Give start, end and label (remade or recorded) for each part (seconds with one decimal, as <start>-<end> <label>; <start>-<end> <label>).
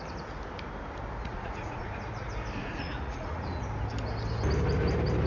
0.0-1.2 recorded; 1.2-1.9 remade; 1.9-2.6 recorded; 2.6-3.6 remade; 3.6-5.3 recorded